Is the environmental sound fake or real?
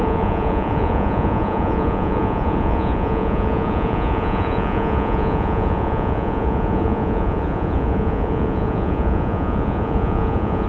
fake